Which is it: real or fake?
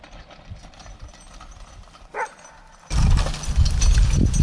real